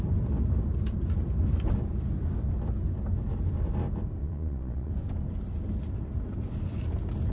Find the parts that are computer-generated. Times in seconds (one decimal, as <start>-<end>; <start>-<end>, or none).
4.2-4.9